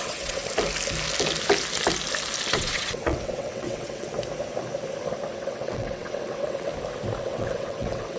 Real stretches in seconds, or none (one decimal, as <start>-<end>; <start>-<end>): 0.4-2.5; 4.1-5.4; 6.7-7.2